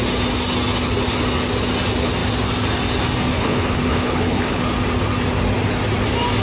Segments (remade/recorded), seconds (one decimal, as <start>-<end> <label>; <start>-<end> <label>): 0.0-3.3 recorded; 3.3-4.6 remade; 4.6-6.4 recorded